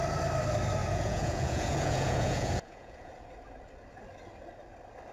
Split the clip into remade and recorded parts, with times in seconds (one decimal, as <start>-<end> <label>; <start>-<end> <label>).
0.0-0.8 recorded; 0.8-3.1 remade; 3.1-5.1 recorded